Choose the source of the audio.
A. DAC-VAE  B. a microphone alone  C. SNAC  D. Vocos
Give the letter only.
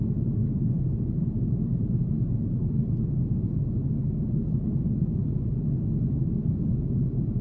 B